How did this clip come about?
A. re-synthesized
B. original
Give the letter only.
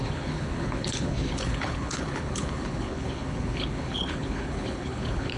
A